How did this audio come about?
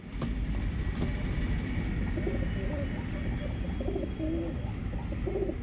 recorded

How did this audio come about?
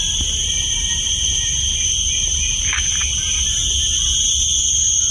remade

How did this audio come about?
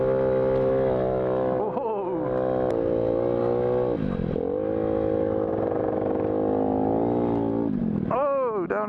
recorded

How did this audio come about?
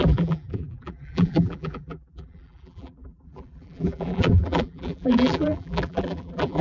remade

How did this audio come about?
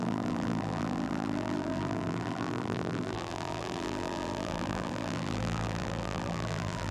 remade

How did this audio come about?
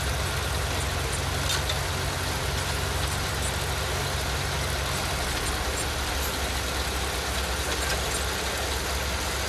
recorded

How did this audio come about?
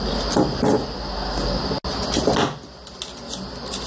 recorded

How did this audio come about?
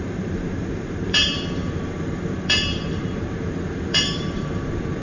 remade